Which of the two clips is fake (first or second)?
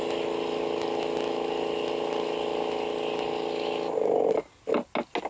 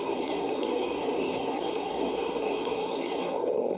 second